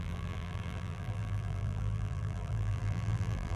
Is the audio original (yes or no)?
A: no